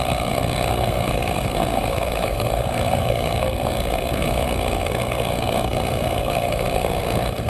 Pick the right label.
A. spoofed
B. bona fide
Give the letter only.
A